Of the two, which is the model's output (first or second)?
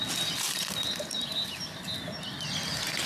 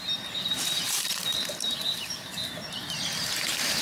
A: second